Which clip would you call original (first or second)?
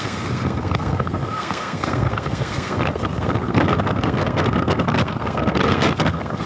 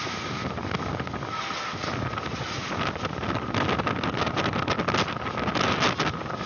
second